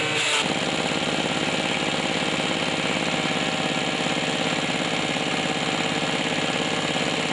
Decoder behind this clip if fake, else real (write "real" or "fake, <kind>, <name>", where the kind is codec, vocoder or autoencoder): real